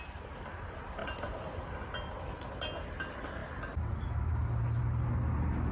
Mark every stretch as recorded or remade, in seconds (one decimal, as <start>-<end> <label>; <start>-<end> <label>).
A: 0.0-5.7 recorded